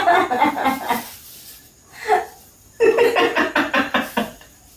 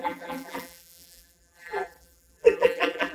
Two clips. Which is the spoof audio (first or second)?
second